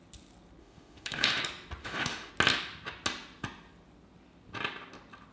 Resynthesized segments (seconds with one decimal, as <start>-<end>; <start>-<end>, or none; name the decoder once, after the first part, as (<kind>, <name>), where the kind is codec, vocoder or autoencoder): 0.6-1.4 (autoencoder, DAC-VAE); 1.8-2.3